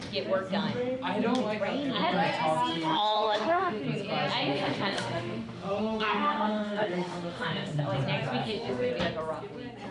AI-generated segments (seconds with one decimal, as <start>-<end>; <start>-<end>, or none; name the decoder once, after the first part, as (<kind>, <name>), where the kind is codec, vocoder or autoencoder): 2.7-3.8 (autoencoder, DAC-VAE); 4.5-7.8; 8.4-8.9